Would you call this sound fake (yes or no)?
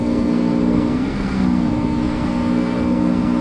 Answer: yes